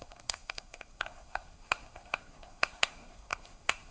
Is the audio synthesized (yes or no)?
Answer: yes